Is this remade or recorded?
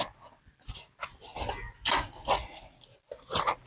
recorded